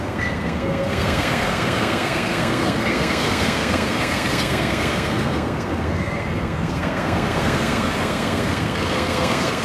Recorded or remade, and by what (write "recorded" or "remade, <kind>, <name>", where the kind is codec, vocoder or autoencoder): remade, codec, SNAC